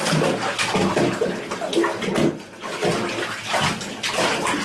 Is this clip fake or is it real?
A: real